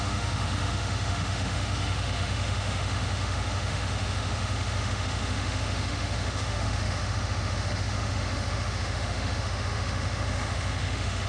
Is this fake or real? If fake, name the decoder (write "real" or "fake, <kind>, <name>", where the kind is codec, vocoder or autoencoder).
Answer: fake, autoencoder, DAC-VAE